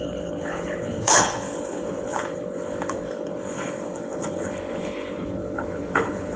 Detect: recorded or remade remade